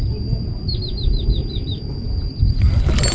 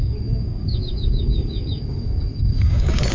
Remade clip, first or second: second